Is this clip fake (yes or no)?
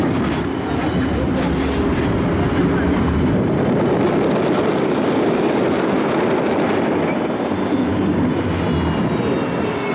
no